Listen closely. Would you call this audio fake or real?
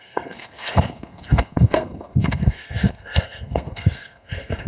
fake